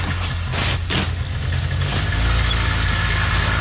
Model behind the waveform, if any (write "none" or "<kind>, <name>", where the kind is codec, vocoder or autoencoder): none